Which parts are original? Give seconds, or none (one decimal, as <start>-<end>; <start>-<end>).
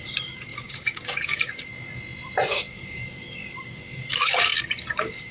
1.7-2.5